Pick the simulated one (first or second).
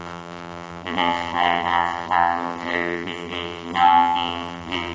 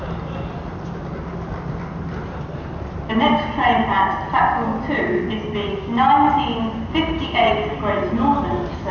first